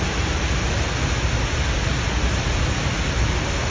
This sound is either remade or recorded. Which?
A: recorded